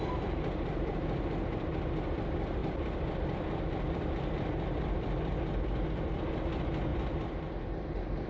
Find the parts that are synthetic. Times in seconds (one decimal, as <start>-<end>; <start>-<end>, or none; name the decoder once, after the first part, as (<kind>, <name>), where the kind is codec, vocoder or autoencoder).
2.6-6.4 (vocoder, BigVGAN v2)